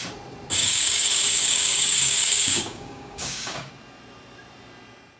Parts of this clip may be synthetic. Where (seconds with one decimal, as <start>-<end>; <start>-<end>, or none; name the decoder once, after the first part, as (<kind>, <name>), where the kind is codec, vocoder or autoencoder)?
0.6-3.7 (codec, DAC)